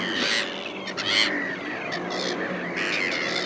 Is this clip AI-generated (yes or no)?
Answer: no